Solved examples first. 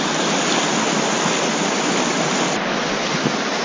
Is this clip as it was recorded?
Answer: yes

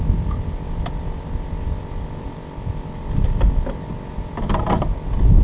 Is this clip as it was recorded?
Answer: yes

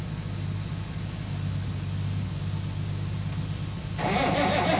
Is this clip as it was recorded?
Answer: yes